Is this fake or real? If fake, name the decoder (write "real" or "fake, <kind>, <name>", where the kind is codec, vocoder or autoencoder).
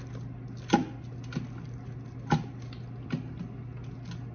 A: real